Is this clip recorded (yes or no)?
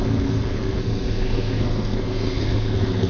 no